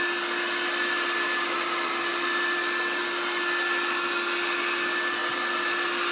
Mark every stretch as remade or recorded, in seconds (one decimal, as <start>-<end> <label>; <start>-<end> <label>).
0.0-6.1 recorded